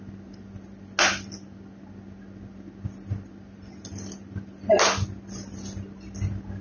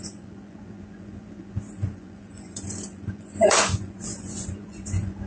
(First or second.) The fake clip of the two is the second